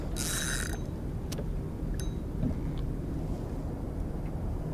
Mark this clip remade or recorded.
recorded